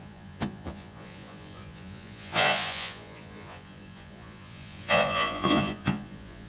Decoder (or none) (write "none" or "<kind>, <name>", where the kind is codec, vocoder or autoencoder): vocoder, Vocos